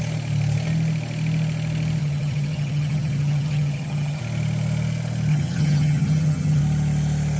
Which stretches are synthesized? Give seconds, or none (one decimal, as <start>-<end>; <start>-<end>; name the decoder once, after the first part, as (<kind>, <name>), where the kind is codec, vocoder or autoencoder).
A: 2.0-4.2 (vocoder, HiFi-GAN); 5.3-6.6